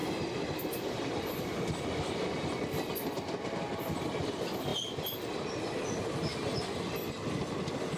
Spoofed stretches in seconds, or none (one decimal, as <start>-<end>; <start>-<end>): none